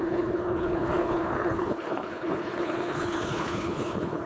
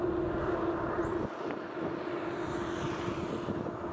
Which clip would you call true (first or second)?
second